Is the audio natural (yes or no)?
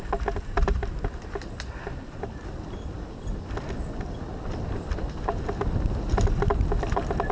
yes